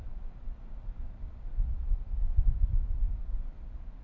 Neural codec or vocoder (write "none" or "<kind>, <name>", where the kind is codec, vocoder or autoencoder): none